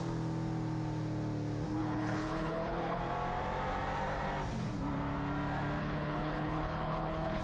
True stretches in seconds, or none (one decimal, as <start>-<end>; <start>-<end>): 0.0-1.8; 3.0-5.8